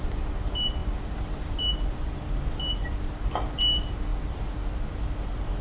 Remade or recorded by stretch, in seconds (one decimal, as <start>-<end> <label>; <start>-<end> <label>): 0.0-5.6 recorded